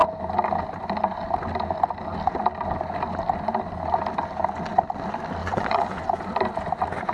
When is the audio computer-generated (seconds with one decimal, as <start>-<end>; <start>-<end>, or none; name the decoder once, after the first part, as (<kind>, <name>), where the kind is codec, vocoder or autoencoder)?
5.4-6.3 (vocoder, Vocos)